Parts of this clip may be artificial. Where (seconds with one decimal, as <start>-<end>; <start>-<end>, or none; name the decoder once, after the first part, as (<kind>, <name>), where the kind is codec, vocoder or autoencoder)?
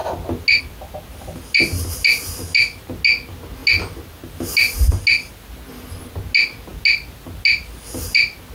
none